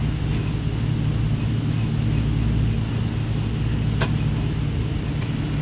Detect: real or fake real